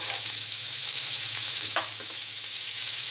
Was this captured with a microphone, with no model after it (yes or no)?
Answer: no